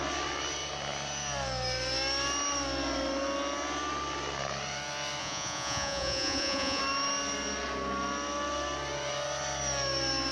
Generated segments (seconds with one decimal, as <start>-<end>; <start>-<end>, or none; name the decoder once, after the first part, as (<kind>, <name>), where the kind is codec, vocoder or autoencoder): 5.2-6.8 (vocoder, Vocos)